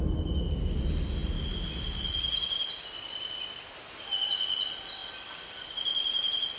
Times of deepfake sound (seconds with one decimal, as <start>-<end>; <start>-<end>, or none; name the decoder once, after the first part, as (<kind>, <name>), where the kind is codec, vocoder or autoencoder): none